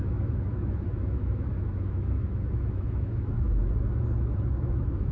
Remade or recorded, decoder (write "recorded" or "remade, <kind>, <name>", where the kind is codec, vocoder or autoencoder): remade, autoencoder, DAC-VAE